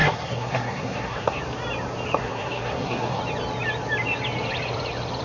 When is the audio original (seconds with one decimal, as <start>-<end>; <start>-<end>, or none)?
1.4-2.2; 3.2-5.2